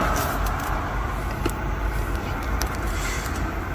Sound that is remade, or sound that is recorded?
recorded